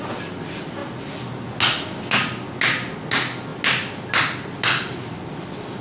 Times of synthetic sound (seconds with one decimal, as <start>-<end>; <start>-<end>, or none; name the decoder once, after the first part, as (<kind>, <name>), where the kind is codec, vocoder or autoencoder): none

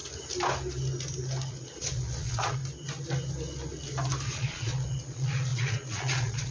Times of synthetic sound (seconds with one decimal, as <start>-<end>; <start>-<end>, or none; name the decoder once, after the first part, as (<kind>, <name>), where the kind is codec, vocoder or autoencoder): 1.5-2.6 (vocoder, Vocos); 4.3-6.5

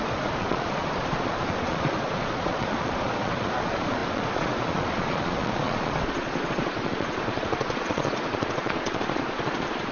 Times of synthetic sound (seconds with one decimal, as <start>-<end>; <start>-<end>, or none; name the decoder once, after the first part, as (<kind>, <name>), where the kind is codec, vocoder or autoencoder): 0.0-9.9 (vocoder, Vocos)

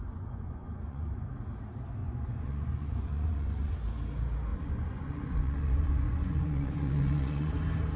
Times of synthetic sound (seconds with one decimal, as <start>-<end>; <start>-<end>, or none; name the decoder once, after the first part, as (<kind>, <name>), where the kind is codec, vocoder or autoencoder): 0.0-1.3 (vocoder, Vocos); 2.0-3.7; 4.5-7.5

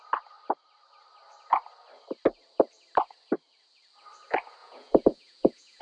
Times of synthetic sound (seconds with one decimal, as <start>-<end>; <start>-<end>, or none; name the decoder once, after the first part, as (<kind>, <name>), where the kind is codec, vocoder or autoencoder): 4.6-5.8 (vocoder, Vocos)